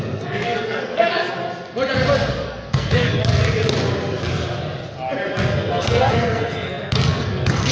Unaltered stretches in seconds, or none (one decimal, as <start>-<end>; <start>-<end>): 1.4-2.3; 3.2-5.5